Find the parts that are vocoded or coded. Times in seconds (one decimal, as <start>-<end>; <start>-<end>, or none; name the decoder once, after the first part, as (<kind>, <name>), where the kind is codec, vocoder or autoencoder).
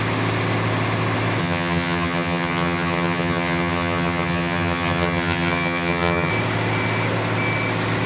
1.4-6.3 (vocoder, HiFi-GAN)